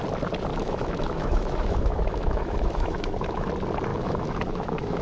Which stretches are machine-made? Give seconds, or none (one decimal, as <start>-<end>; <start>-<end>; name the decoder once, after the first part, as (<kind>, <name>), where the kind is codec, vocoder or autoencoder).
0.5-3.5 (autoencoder, DAC-VAE); 3.9-5.0